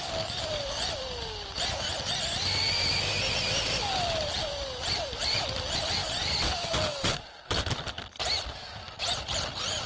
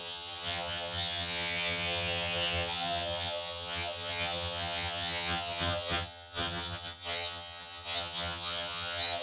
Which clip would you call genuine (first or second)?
first